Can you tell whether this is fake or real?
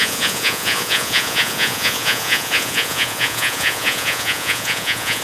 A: fake